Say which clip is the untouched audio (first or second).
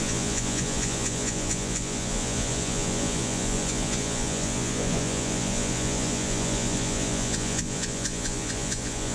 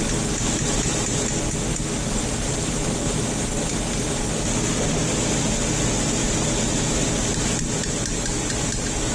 second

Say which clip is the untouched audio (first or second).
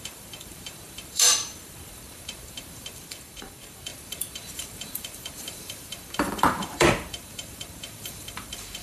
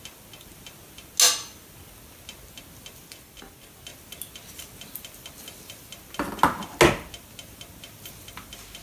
second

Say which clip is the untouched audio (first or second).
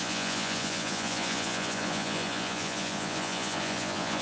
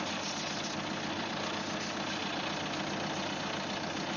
second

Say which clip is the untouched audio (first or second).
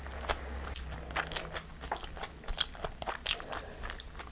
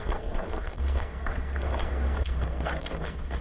first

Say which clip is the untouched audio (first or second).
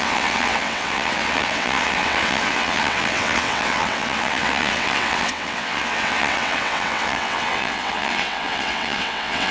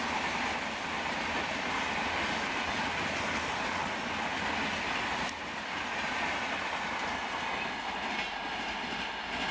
second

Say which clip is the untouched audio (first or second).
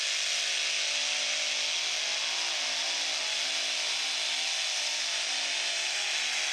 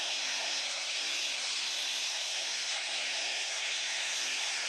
first